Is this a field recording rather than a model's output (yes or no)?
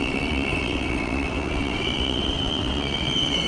no